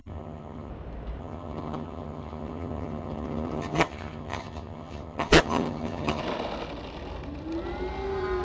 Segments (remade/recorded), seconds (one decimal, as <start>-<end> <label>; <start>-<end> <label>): 0.0-0.7 remade; 0.7-1.2 recorded; 1.2-6.2 remade; 6.2-8.4 recorded